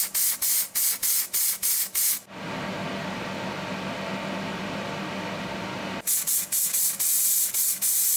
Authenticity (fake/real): real